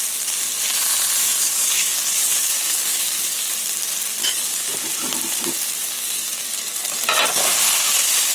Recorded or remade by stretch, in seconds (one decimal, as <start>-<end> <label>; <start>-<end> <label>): 0.0-1.2 recorded; 1.2-3.5 remade; 3.5-4.2 recorded; 4.2-4.8 remade; 4.8-5.8 recorded; 5.8-6.5 remade; 6.5-8.3 recorded